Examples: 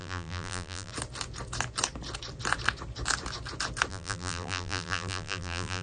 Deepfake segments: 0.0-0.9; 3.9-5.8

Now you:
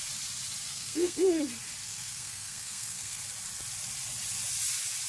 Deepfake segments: 0.7-1.4; 1.8-3.2

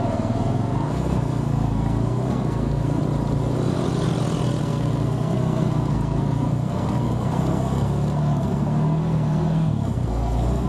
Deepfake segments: 0.0-3.0; 4.6-10.7

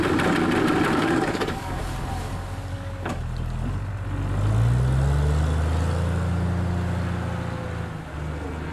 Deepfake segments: 1.0-1.8; 2.7-3.2